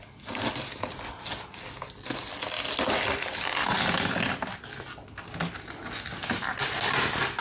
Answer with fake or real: real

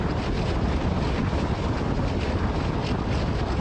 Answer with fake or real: real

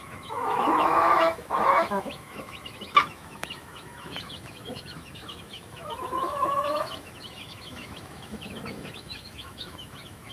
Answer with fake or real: fake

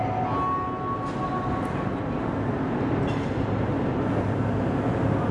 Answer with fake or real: real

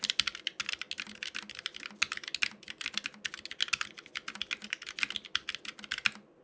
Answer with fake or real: real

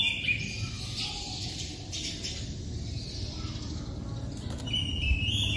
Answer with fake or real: real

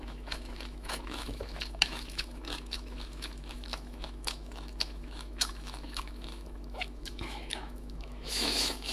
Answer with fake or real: fake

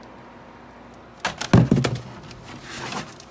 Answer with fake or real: real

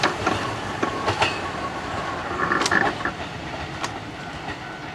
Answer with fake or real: real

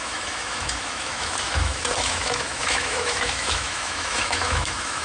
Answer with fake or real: fake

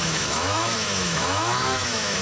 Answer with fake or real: fake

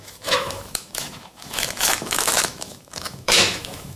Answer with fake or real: fake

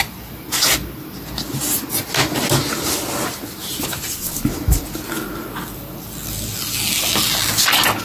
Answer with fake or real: real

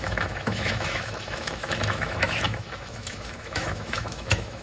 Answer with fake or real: fake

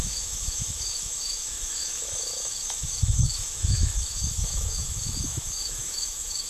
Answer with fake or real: fake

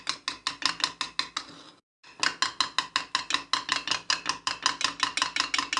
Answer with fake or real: real